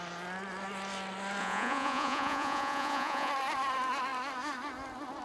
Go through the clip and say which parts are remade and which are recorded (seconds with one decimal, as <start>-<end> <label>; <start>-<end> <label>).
0.0-1.4 recorded; 1.4-3.3 remade; 3.3-5.2 recorded